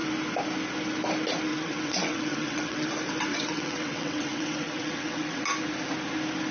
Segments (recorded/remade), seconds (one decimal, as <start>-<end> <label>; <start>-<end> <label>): 0.0-1.5 recorded; 1.5-2.9 remade; 2.9-3.3 recorded; 3.3-5.4 remade; 5.4-6.5 recorded